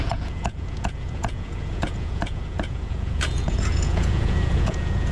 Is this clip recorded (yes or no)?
no